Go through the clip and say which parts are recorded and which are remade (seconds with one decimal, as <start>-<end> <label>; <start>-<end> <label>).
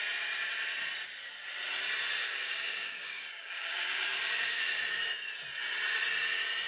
0.0-2.2 recorded; 2.2-4.8 remade; 4.8-6.7 recorded